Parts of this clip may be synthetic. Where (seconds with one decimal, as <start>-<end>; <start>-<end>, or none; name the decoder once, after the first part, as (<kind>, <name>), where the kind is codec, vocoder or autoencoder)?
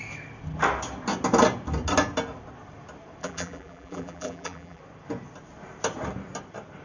3.2-4.8 (vocoder, BigVGAN v2)